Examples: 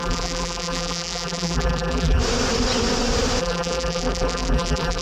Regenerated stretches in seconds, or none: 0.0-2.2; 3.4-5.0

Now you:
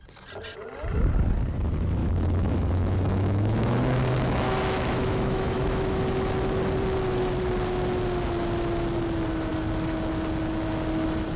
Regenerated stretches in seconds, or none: 2.0-6.0

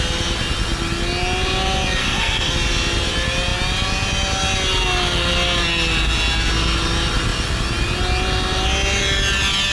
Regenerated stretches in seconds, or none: 2.0-2.5

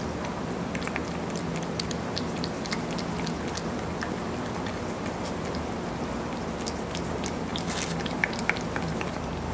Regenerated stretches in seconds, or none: none

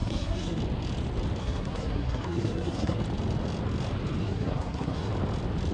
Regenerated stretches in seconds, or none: 0.0-0.6; 1.4-3.0; 4.2-5.1